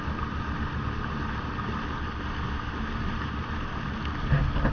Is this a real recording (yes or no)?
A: yes